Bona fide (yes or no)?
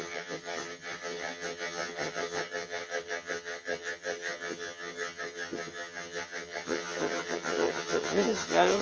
no